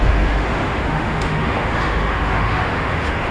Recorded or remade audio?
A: remade